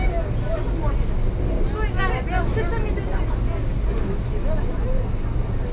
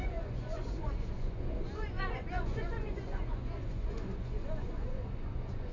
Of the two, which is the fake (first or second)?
second